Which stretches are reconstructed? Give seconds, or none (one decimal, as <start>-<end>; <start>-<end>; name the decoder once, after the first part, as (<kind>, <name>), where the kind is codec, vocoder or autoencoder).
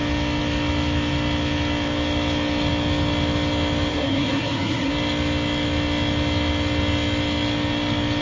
3.9-4.9 (codec, SNAC)